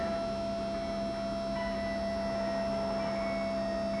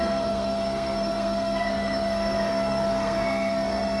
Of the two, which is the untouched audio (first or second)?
first